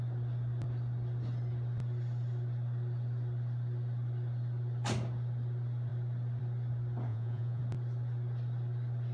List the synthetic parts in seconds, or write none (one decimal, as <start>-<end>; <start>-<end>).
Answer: 7.1-7.6